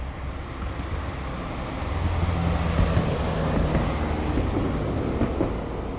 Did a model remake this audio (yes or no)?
no